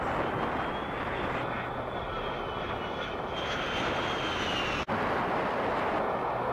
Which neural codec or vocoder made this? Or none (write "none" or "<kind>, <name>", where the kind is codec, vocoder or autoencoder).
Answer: none